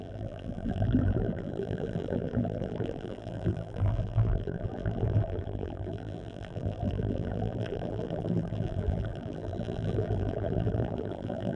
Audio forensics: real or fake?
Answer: fake